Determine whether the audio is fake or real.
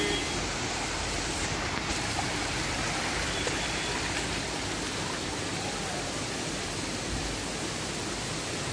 real